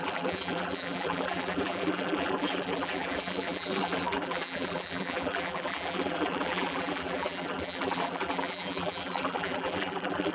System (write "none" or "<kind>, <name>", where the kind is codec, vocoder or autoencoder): vocoder, BigVGAN v2